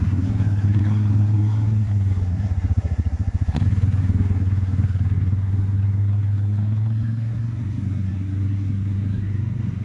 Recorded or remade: remade